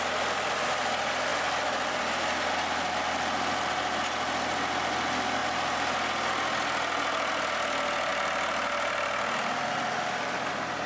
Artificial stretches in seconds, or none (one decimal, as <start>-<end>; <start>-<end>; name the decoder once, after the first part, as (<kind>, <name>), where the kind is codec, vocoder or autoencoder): none